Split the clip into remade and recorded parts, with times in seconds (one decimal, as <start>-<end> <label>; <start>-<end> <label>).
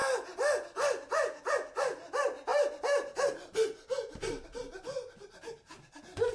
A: 0.0-2.5 recorded; 2.5-6.3 remade